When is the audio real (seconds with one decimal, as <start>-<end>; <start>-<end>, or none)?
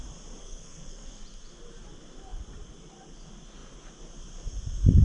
0.0-0.4; 1.2-5.0